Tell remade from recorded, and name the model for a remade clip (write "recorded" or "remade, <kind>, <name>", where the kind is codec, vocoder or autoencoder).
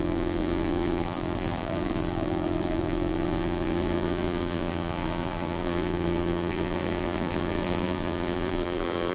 remade, vocoder, BigVGAN v2